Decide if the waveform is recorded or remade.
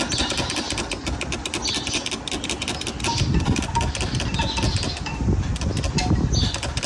recorded